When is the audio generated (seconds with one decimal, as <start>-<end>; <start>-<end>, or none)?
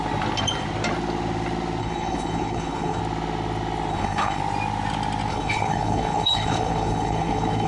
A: 1.8-3.0; 3.9-4.4; 5.3-7.7